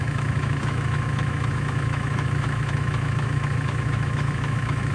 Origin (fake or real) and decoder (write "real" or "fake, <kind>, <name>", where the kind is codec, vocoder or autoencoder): fake, autoencoder, DAC-VAE